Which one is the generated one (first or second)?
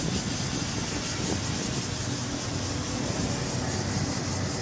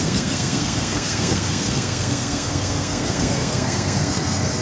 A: second